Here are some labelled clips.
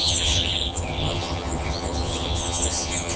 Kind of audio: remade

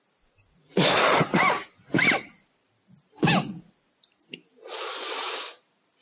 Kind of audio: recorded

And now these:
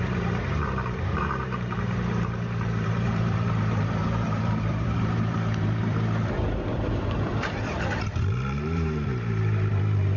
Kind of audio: remade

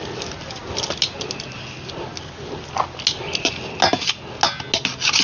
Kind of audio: recorded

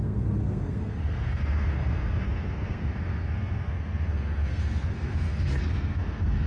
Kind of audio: remade